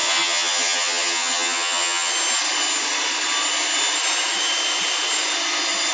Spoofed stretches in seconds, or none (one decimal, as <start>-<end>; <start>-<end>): 0.0-2.1